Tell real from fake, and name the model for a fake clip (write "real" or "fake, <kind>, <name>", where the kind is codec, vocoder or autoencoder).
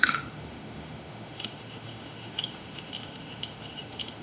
fake, autoencoder, DAC-VAE